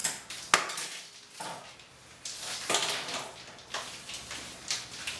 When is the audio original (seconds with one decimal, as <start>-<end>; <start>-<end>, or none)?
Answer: 0.0-5.2